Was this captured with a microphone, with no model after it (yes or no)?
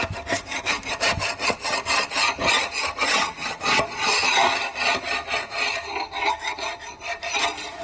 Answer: no